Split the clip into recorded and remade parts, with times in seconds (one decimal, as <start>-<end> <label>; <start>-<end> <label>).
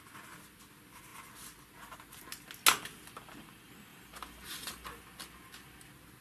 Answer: 0.0-3.9 recorded; 3.9-5.0 remade; 5.0-6.2 recorded